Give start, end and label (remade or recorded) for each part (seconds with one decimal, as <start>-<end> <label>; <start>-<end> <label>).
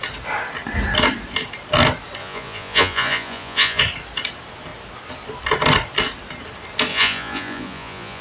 0.0-2.2 recorded; 2.2-3.8 remade; 3.8-6.9 recorded; 6.9-8.2 remade